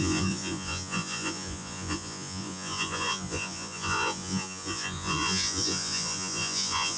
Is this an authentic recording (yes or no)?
no